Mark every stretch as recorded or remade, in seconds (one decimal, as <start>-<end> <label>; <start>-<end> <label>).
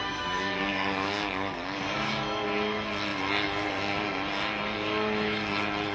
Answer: 0.0-2.1 remade; 2.1-5.9 recorded